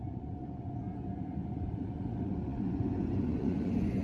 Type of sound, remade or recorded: remade